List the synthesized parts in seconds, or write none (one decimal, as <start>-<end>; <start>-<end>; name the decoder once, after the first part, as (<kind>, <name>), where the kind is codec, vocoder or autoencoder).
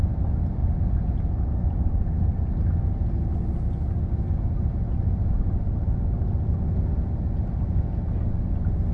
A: none